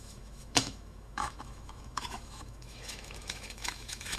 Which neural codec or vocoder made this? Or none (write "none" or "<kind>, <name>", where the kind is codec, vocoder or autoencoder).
autoencoder, DAC-VAE